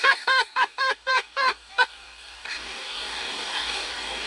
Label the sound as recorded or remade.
remade